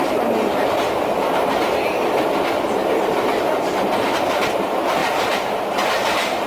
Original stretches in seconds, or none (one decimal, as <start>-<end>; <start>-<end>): 0.0-6.5